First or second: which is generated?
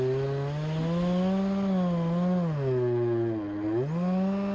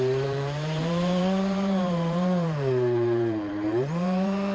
second